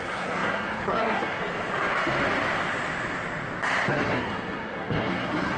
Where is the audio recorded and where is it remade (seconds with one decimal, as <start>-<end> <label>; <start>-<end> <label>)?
0.0-1.4 remade; 1.4-3.9 recorded; 3.9-5.6 remade